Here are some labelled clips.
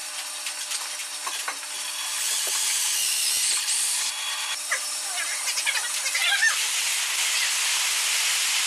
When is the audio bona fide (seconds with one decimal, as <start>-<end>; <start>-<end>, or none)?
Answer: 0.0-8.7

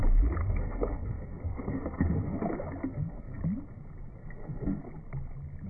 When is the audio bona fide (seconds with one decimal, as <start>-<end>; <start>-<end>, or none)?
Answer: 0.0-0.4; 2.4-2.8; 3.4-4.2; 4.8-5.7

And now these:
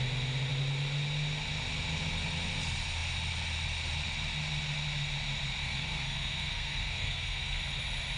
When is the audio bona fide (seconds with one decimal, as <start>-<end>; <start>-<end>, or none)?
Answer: 0.0-5.6; 7.6-8.2

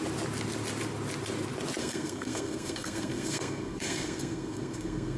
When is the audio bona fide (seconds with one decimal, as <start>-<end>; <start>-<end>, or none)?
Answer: 0.0-1.8

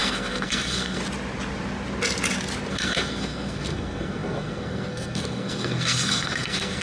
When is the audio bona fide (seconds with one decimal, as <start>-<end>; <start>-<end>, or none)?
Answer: 1.0-2.7